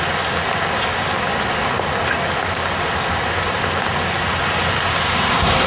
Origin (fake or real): real